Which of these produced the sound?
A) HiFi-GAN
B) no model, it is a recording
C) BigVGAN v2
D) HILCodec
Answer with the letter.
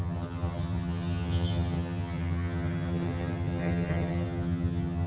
A